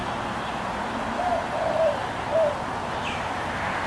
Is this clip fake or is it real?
real